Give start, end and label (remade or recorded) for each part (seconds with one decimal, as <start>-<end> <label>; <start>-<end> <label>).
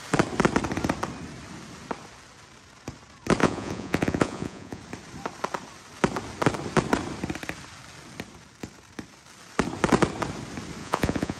0.0-3.4 recorded; 3.4-4.8 remade; 4.8-10.8 recorded; 10.8-11.4 remade